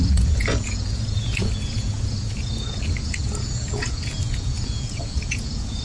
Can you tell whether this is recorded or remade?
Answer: remade